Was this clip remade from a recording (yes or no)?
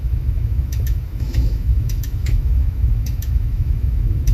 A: yes